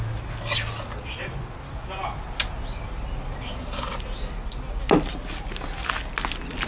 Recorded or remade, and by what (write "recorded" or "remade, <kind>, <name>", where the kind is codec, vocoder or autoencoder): recorded